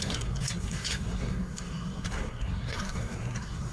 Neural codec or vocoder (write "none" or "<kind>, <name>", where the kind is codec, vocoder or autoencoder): codec, SNAC